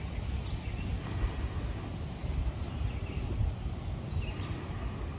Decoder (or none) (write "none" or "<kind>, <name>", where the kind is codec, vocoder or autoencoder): none